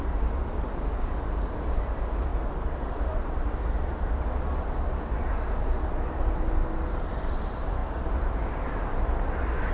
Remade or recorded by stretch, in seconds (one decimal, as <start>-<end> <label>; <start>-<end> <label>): 0.0-9.7 recorded